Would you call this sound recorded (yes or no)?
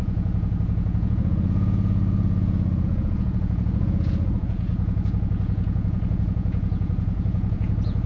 no